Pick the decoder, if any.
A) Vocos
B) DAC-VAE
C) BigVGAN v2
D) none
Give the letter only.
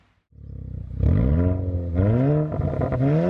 D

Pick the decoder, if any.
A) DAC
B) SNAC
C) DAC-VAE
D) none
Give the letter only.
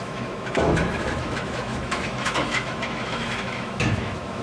C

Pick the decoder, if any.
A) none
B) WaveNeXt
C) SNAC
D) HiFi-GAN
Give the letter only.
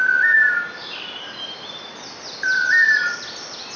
A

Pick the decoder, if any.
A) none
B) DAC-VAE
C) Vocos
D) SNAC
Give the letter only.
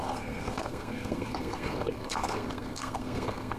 D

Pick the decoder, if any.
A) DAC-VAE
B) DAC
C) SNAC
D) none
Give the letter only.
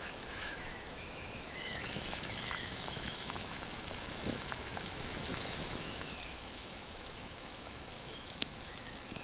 A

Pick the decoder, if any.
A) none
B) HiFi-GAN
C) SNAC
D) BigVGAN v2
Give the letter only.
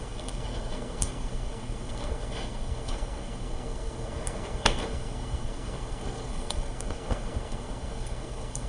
C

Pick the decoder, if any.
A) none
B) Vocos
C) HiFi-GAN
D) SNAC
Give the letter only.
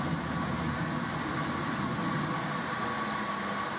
A